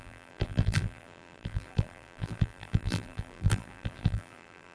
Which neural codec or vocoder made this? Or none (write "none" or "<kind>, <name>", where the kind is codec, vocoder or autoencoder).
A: vocoder, BigVGAN v2